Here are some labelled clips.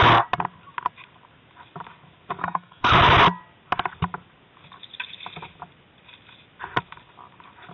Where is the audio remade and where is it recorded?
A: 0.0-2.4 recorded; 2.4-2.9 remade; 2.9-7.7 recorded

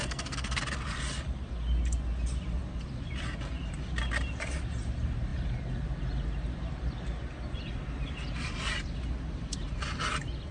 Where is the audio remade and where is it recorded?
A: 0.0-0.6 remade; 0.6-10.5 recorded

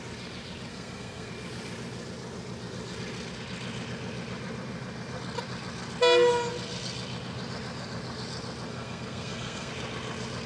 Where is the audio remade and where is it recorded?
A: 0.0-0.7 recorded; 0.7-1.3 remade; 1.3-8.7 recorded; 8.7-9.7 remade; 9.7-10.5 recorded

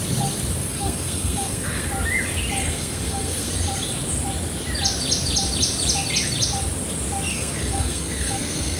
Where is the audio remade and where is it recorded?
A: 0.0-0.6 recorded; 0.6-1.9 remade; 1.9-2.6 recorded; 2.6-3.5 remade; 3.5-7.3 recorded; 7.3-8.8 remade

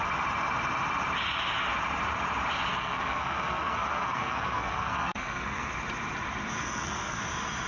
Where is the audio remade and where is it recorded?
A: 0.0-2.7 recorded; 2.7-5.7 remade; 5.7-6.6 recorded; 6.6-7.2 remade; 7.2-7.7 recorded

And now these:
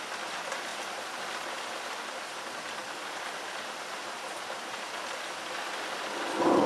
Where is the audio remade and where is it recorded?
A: 0.0-6.7 recorded

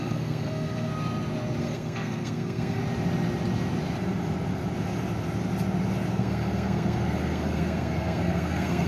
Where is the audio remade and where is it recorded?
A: 0.0-0.9 remade; 0.9-1.6 recorded; 1.6-2.8 remade; 2.8-6.1 recorded; 6.1-8.9 remade